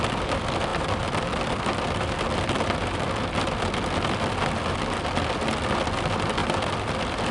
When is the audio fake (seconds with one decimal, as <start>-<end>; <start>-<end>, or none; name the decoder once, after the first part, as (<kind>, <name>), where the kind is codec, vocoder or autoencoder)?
none